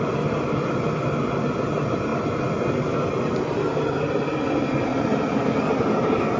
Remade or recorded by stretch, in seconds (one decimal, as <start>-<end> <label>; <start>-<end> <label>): 0.0-6.4 recorded